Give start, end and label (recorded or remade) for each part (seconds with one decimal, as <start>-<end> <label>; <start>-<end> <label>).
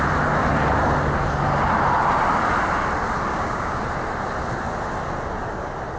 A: 0.0-3.3 recorded; 3.3-3.8 remade; 3.8-6.0 recorded